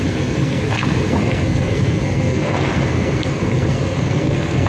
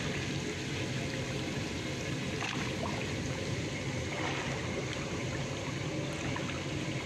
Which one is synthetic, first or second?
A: first